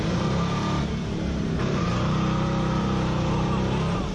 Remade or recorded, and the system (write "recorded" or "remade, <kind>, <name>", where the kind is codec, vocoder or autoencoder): remade, vocoder, BigVGAN v2